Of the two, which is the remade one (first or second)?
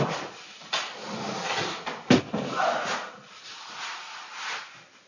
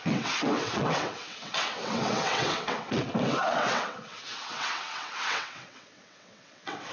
second